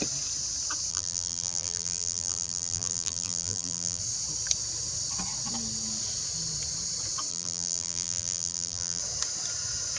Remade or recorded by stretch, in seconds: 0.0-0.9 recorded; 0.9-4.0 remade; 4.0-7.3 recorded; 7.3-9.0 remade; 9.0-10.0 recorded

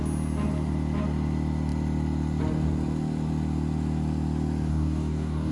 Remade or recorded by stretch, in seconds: 0.0-4.7 recorded; 4.7-5.5 remade

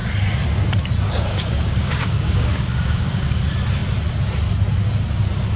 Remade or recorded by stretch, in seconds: 0.0-1.3 recorded; 1.3-3.4 remade; 3.4-5.6 recorded

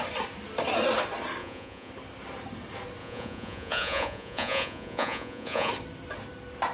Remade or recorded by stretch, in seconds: 0.0-1.4 recorded; 1.4-1.9 remade; 1.9-3.0 recorded; 3.0-5.7 remade; 5.7-6.7 recorded